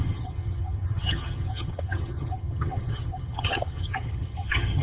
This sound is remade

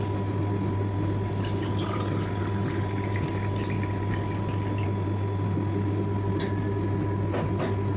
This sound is recorded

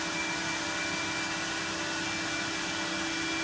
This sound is recorded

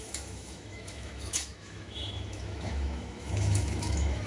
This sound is remade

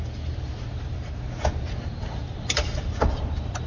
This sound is remade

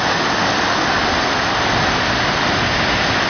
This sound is recorded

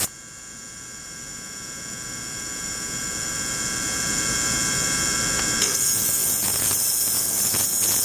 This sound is remade